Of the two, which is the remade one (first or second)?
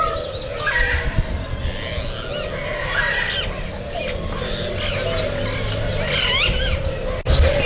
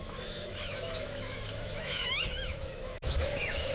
second